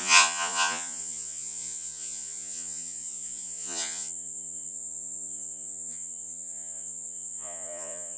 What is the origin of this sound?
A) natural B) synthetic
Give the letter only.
B